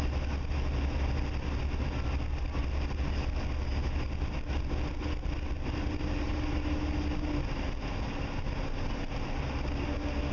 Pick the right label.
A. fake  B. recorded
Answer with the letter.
B